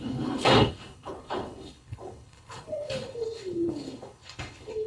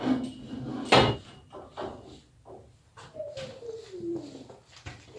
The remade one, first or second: first